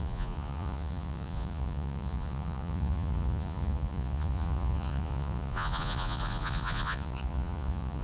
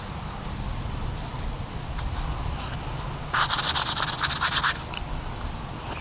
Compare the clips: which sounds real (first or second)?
second